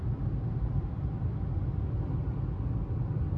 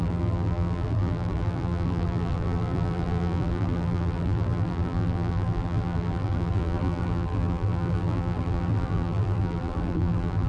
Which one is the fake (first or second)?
second